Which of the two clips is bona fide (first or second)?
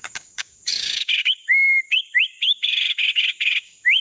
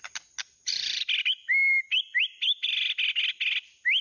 second